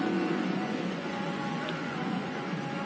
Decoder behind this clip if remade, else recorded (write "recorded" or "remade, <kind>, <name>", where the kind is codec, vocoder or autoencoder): remade, vocoder, Vocos